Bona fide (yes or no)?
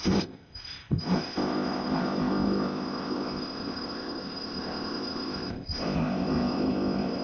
no